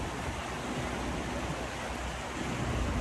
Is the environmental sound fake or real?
real